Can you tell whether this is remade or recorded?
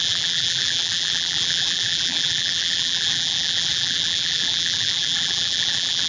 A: remade